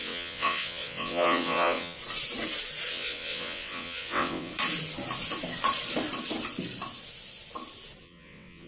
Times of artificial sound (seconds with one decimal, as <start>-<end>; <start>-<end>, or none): 0.0-2.0; 2.9-4.5; 8.0-8.7